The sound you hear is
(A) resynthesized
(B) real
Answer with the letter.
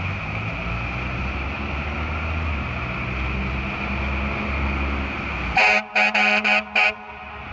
B